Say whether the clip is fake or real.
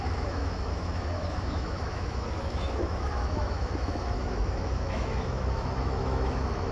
fake